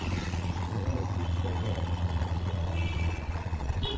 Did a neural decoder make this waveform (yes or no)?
yes